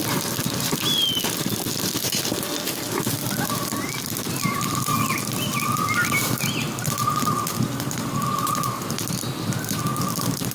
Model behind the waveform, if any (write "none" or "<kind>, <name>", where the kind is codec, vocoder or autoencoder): none